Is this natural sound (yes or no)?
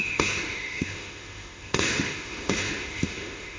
no